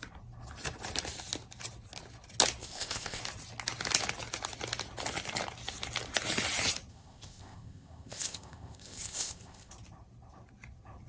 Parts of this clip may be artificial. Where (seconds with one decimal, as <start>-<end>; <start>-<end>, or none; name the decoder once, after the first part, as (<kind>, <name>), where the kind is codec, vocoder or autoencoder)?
2.6-3.2 (codec, ZipCodec); 6.9-9.7

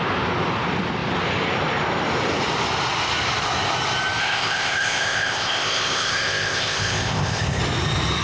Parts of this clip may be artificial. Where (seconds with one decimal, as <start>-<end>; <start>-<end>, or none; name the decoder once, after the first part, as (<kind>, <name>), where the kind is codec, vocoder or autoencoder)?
4.2-7.6 (codec, ZipCodec)

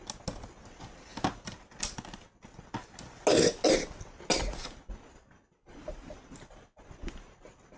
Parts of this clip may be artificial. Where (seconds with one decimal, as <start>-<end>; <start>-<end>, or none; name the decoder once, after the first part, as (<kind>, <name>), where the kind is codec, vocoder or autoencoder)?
none

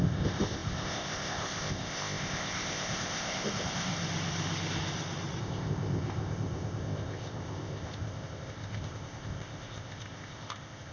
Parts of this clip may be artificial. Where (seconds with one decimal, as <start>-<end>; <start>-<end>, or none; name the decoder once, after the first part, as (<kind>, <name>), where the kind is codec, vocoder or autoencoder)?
0.0-3.9 (codec, ZipCodec); 5.4-10.9

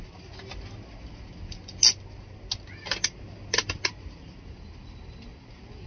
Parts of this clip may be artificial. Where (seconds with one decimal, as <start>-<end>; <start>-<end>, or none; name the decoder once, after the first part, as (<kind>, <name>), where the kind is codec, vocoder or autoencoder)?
none

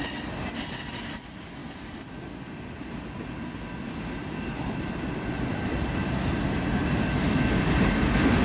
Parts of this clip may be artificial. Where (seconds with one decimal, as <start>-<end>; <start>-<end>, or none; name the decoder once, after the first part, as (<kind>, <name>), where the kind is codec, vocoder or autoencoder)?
none